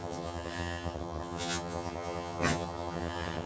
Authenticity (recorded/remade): remade